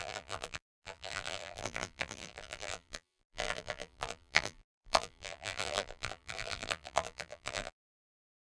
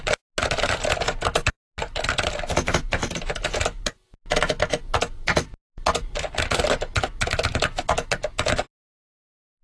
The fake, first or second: first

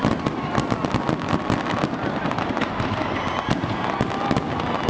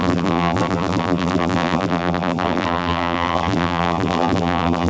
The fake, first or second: second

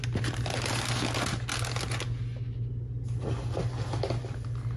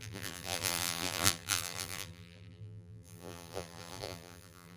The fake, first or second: second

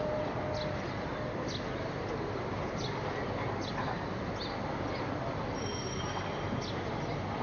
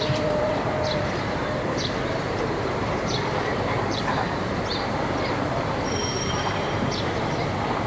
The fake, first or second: second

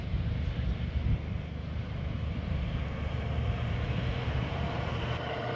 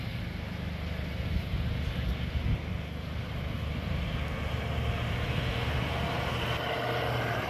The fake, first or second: first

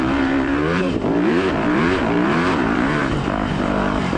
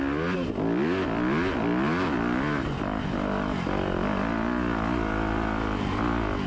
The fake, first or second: first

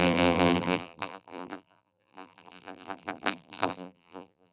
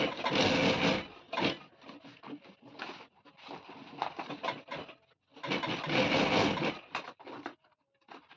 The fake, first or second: first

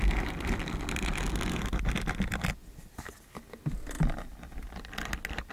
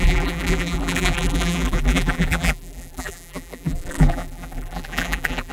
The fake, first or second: second